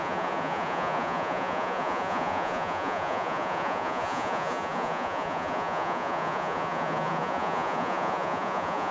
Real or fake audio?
fake